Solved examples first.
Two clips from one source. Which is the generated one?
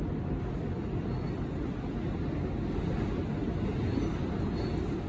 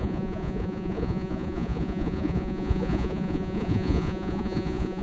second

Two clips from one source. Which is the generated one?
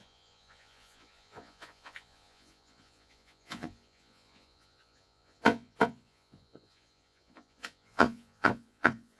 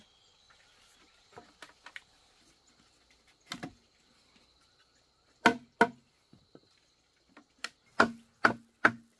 first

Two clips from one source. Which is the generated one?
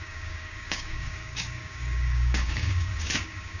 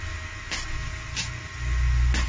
first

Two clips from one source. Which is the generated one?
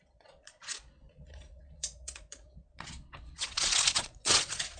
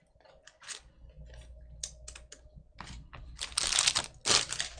first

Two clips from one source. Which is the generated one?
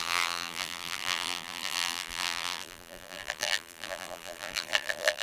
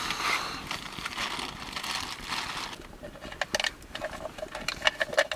first